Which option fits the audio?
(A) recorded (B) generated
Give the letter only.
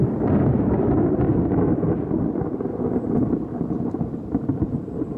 A